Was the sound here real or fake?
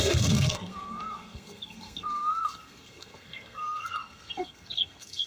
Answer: fake